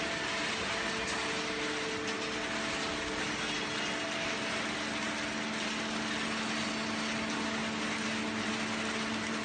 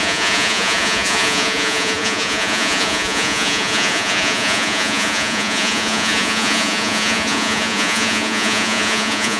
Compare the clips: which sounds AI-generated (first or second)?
second